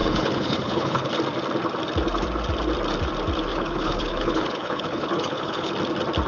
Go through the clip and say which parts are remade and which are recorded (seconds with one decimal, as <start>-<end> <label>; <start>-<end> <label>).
0.0-1.1 remade; 1.1-3.5 recorded; 3.5-5.7 remade; 5.7-6.3 recorded